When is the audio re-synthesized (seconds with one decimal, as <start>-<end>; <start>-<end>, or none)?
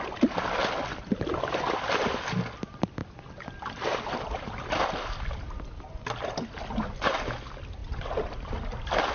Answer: 3.0-5.8; 7.8-9.1